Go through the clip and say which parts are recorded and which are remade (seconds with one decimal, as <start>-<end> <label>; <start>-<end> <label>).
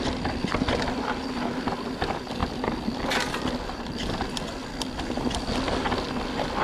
0.0-6.6 recorded